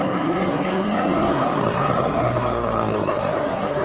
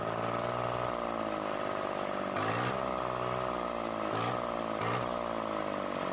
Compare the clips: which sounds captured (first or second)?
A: second